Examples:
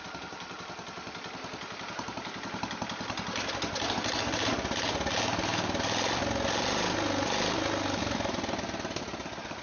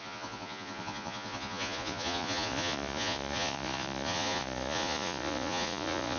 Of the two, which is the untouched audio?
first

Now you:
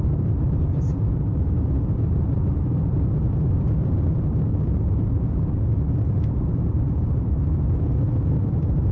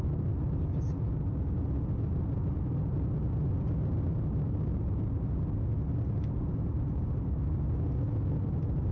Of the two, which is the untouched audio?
second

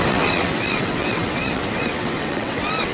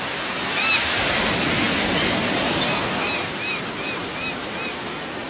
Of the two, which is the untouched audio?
second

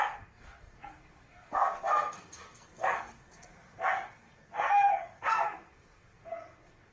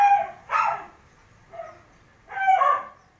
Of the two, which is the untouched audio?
second